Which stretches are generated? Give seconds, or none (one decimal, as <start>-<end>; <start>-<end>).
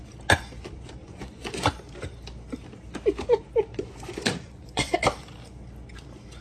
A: 1.0-1.7; 3.7-4.9